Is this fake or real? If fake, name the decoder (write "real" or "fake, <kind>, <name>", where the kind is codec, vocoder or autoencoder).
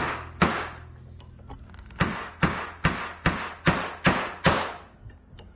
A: real